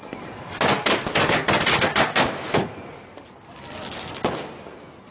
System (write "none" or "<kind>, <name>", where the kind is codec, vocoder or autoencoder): none